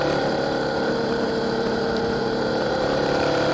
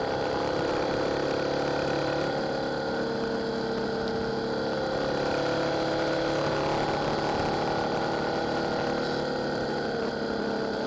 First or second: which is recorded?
second